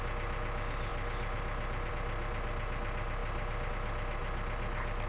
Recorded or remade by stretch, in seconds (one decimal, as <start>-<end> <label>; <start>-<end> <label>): 0.0-5.1 recorded